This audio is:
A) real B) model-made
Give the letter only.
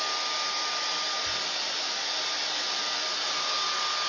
A